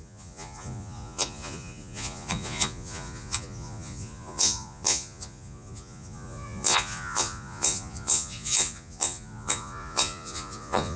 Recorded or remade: remade